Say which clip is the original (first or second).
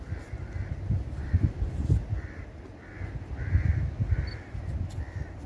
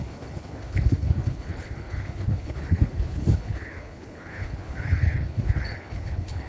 first